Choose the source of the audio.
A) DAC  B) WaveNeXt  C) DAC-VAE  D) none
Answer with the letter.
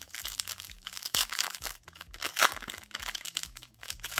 A